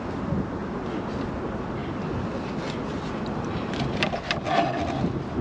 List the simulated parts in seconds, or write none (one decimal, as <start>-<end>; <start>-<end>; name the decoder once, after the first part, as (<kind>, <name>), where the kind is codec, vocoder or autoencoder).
none